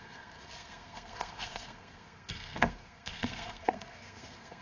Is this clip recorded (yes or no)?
no